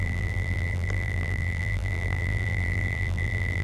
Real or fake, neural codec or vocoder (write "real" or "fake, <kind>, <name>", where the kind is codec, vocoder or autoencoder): fake, vocoder, BigVGAN v2